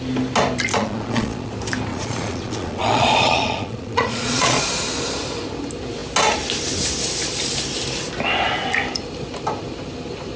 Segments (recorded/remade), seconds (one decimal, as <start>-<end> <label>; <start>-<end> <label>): 0.0-0.7 recorded; 0.7-1.5 remade; 1.5-1.9 recorded; 1.9-4.6 remade; 4.6-10.4 recorded